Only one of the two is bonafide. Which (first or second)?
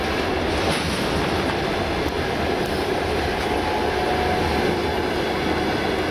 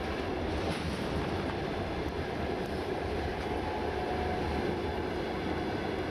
first